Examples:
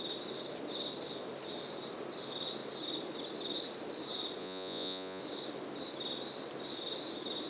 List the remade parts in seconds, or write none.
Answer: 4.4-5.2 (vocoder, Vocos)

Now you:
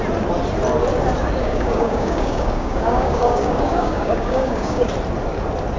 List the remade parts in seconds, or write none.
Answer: 1.4-4.9 (codec, DAC)

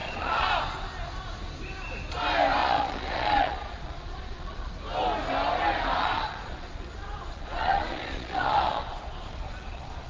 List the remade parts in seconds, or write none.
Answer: 0.0-0.5 (vocoder, Vocos); 2.6-4.7; 6.0-10.1

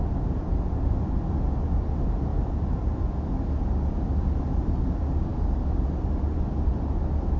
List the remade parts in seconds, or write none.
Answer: none

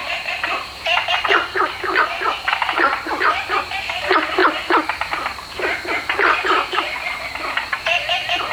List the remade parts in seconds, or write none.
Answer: 0.0-3.8 (vocoder, BigVGAN v2)

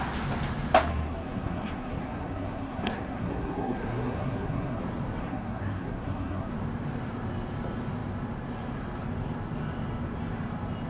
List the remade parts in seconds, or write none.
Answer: 0.9-4.8 (codec, SNAC); 5.2-6.5

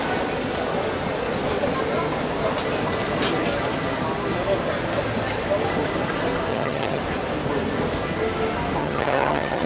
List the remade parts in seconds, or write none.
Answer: 6.5-7.0 (vocoder, HiFi-GAN); 8.8-9.7